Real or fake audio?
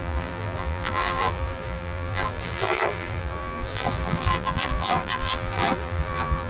fake